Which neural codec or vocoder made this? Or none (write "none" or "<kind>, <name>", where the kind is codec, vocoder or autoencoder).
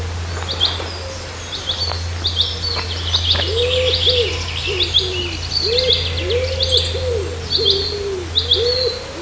none